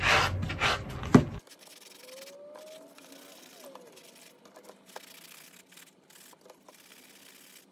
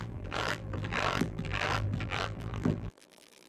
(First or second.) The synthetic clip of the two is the second